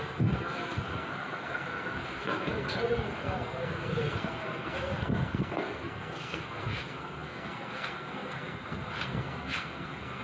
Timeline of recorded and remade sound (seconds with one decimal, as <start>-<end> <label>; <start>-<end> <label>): 0.0-10.2 remade